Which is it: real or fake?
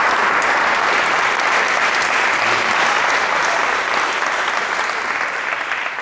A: real